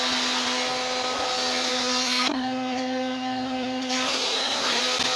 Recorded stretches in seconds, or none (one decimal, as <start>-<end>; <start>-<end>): 0.0-1.7; 4.8-5.2